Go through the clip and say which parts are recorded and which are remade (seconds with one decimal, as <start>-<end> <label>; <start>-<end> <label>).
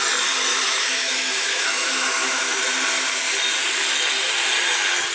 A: 0.0-0.5 recorded; 0.5-2.6 remade; 2.6-5.1 recorded